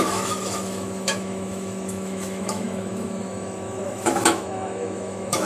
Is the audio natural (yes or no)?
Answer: no